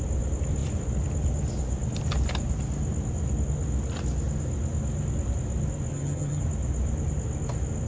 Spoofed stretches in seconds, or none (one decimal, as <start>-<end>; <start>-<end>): 5.9-6.4